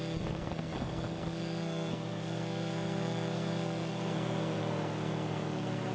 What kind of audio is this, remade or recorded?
remade